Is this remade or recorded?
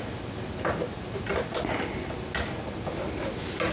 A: recorded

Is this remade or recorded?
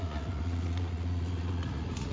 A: remade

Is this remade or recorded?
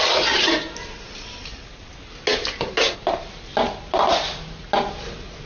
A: recorded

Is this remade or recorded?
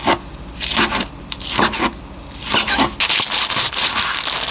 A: recorded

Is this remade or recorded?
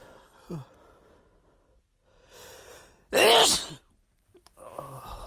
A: recorded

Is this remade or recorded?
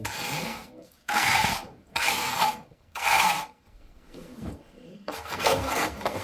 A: remade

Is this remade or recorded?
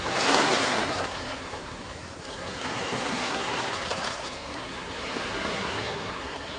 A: remade